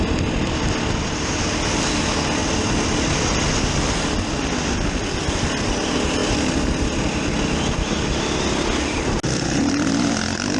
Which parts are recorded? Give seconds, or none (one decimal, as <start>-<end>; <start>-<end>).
0.0-10.6